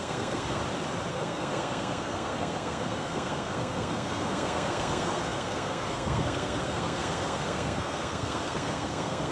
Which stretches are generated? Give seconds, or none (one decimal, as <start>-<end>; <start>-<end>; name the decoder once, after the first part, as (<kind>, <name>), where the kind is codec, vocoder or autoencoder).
0.0-0.6 (codec, SNAC); 1.1-9.3